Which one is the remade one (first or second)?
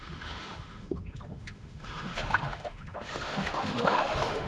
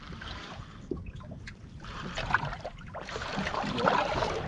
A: first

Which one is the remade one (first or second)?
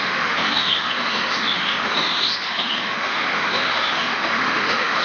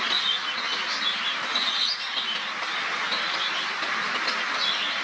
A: first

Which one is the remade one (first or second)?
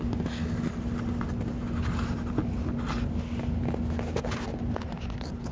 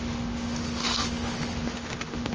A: second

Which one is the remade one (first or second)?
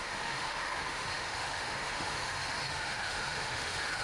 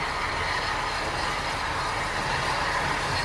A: first